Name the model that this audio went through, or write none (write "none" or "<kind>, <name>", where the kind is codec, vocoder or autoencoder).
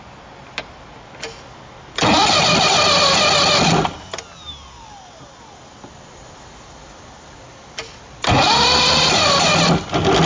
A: none